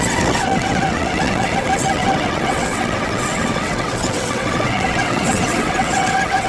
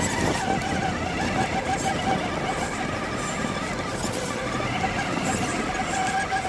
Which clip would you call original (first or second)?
second